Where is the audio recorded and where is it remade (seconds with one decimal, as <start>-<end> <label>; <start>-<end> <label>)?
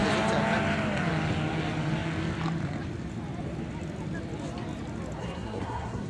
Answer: 0.0-5.2 recorded; 5.2-6.1 remade